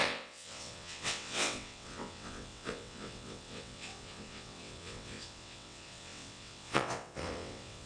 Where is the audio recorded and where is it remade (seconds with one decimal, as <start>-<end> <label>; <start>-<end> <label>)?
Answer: 0.0-7.9 remade

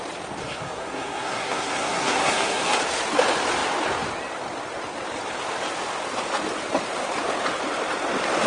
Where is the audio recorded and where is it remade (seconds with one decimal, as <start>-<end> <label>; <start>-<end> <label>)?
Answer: 0.0-0.4 recorded; 0.4-2.8 remade; 2.8-8.5 recorded

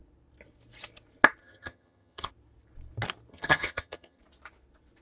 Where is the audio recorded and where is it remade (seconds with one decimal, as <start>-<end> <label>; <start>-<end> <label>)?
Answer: 0.0-1.4 recorded; 1.4-2.3 remade; 2.3-3.3 recorded; 3.3-4.2 remade; 4.2-5.0 recorded